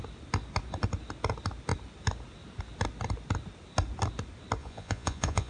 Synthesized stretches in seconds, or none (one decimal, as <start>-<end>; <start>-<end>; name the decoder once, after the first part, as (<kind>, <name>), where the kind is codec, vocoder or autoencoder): 4.6-5.5 (vocoder, Vocos)